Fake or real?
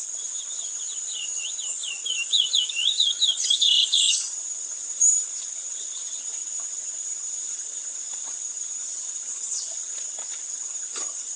fake